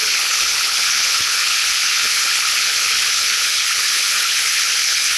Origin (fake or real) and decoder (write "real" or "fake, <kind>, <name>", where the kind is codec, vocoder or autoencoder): fake, codec, HILCodec